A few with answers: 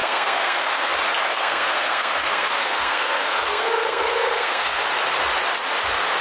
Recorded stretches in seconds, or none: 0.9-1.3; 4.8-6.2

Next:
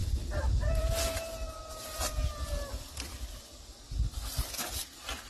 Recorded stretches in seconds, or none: 0.0-5.3

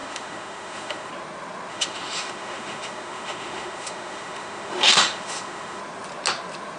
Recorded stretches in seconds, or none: 1.1-1.7; 5.8-6.8

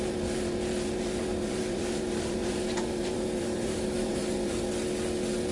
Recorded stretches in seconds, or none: 0.0-1.3; 4.6-5.5

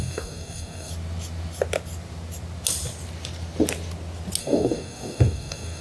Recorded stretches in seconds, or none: 0.9-4.4

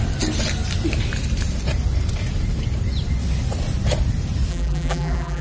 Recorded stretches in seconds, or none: 0.0-4.5

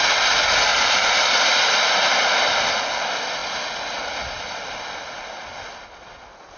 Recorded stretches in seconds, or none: 0.0-0.7; 1.8-6.6

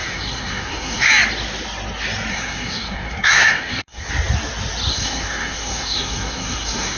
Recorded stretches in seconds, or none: 1.1-2.3; 4.1-4.9